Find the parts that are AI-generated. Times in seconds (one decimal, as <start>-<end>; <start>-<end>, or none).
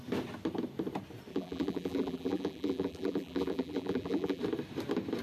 1.3-4.4